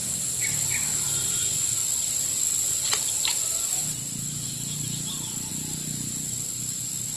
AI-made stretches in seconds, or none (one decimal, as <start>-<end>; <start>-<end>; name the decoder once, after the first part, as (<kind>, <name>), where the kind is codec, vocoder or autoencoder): none